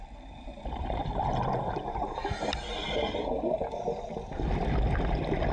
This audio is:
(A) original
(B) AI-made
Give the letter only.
A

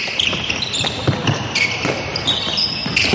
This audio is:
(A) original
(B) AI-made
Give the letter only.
A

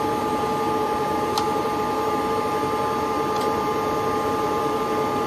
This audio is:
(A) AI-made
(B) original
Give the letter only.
A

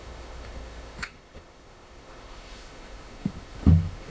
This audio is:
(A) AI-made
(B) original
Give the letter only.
A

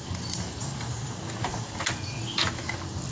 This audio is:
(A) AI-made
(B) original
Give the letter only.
B